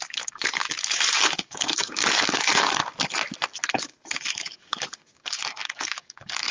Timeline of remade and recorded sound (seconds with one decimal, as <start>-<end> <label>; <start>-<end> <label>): 0.0-2.8 remade; 2.8-3.7 recorded; 3.7-6.5 remade